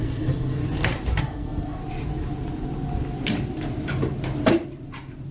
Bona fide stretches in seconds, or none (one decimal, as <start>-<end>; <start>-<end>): 0.6-1.2; 1.8-5.3